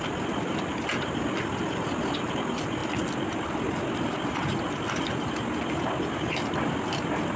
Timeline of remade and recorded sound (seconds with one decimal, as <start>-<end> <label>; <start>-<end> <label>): 0.0-7.4 recorded